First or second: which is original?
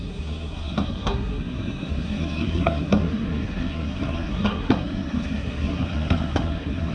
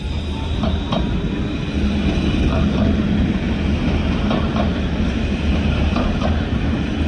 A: second